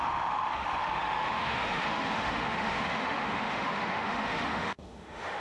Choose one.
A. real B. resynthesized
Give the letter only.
B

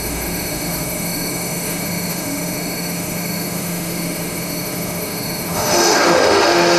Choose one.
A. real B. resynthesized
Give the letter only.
B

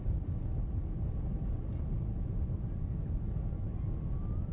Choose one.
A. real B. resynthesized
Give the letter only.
A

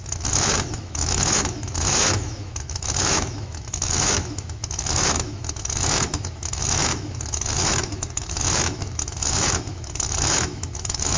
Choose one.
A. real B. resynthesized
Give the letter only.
B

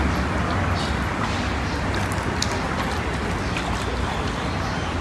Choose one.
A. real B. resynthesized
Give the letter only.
A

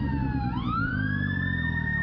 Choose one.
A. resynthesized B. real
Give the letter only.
B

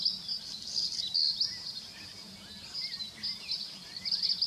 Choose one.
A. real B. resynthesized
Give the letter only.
A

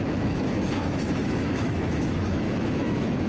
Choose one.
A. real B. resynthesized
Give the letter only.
B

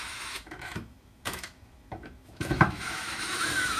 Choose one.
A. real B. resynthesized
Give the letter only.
B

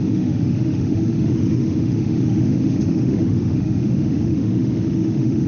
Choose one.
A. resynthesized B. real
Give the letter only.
A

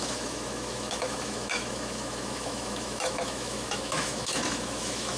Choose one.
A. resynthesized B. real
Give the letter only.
A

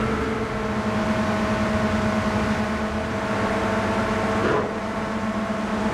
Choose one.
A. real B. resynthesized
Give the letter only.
A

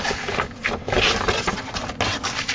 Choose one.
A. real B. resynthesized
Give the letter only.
A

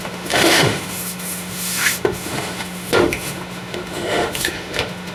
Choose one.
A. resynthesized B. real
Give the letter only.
A